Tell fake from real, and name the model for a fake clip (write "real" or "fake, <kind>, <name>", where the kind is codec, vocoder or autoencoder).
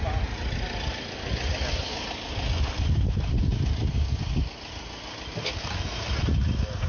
real